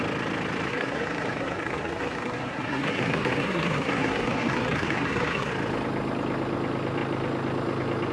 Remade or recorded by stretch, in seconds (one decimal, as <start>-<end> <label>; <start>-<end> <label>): 0.0-0.7 recorded; 0.7-5.5 remade; 5.5-8.1 recorded